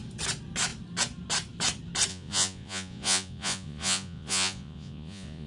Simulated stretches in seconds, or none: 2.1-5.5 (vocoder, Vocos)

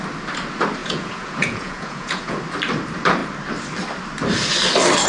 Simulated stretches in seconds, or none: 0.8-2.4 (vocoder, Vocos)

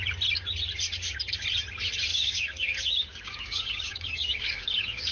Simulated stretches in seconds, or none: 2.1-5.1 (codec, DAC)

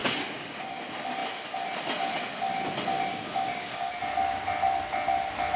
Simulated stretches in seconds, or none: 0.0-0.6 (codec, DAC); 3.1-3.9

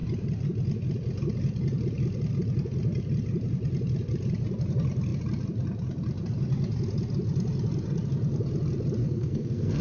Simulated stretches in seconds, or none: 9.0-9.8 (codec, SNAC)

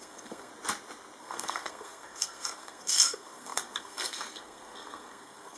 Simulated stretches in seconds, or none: 0.0-0.5 (codec, SNAC); 1.2-5.6